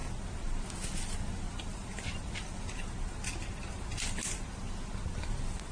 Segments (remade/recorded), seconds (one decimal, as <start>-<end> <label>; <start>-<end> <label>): 0.0-5.7 recorded